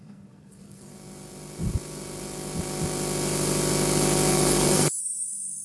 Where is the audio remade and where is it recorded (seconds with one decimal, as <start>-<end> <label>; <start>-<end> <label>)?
0.0-0.9 remade; 0.9-4.3 recorded; 4.3-5.6 remade